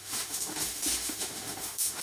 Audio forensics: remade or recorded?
remade